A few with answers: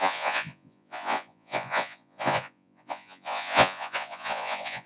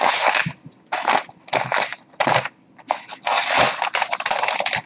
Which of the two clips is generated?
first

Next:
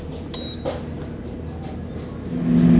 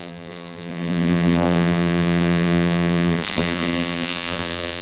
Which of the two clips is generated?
second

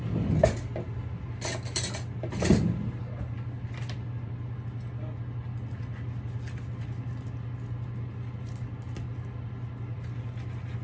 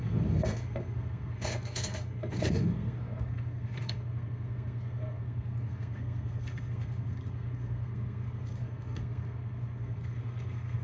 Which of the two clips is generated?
second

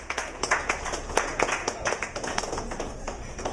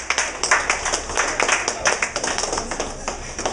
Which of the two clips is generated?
first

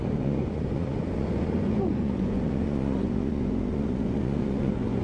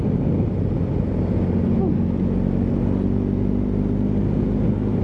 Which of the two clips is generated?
first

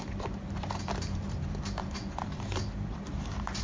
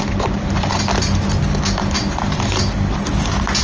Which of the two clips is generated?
first